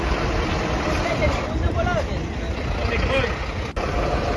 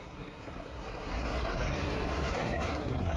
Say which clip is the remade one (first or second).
second